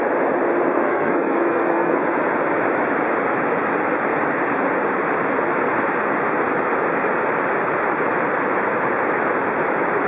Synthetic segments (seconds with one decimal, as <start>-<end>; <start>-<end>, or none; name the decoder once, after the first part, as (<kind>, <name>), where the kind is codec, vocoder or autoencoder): 0.7-2.0 (codec, SNAC)